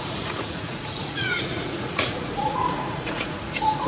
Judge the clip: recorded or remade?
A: remade